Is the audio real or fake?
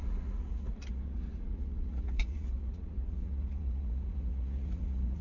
fake